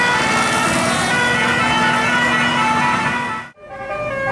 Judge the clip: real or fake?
real